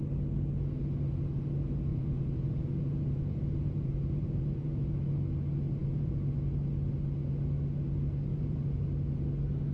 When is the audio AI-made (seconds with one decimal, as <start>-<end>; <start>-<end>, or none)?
1.9-5.0; 5.8-6.3; 8.3-8.8